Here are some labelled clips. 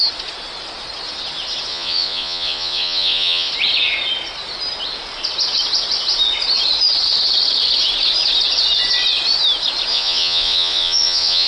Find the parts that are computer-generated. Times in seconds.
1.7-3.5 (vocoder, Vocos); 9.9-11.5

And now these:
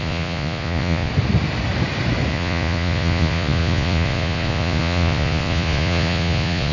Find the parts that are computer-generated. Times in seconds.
0.0-1.1 (vocoder, Vocos); 2.3-6.7